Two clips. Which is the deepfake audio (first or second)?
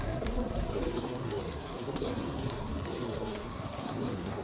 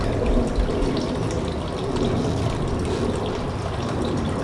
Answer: first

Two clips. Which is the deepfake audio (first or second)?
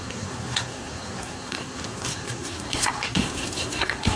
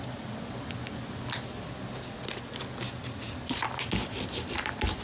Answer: first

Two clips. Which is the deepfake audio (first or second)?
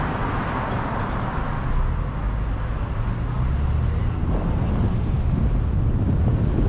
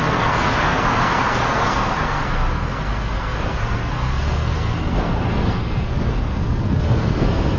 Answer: second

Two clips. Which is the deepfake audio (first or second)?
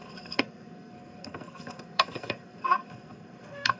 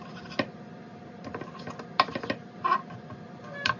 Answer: first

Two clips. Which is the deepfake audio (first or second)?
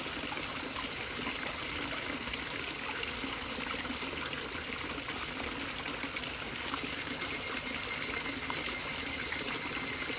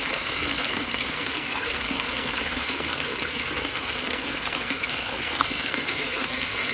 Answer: second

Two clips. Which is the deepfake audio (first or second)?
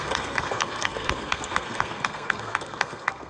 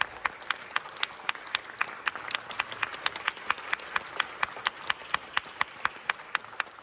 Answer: first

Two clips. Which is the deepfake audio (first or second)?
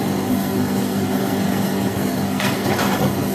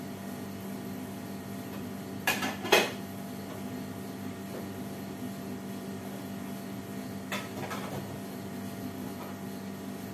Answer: first